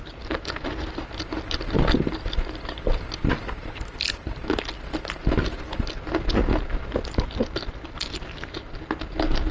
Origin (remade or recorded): recorded